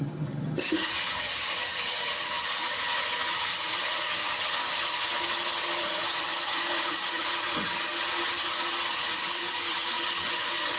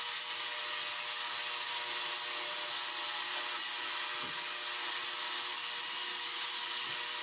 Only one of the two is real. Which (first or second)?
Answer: second